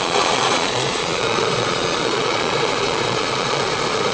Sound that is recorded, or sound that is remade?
remade